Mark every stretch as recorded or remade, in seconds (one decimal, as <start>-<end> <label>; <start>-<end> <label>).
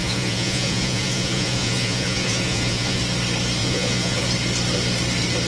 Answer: 0.0-3.0 remade; 3.0-3.6 recorded; 3.6-4.2 remade; 4.2-5.5 recorded